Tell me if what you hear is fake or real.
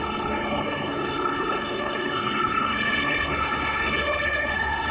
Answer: fake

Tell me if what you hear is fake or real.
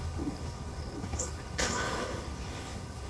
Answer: fake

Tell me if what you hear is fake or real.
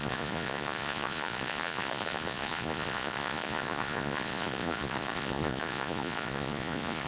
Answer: fake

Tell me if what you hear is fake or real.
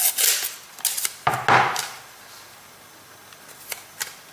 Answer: real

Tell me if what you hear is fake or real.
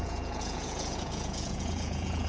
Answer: fake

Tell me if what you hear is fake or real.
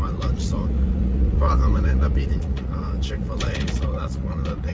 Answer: fake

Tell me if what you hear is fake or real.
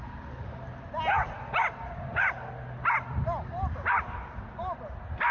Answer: real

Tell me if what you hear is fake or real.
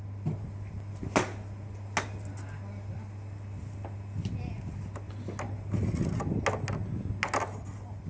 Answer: real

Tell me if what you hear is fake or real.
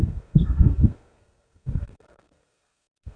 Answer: fake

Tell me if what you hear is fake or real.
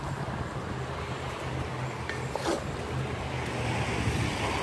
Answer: real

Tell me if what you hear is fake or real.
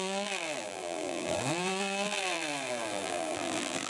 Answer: fake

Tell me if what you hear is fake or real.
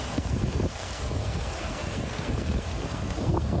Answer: fake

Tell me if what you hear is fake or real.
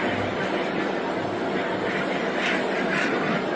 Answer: real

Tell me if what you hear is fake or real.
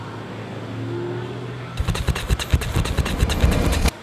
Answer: real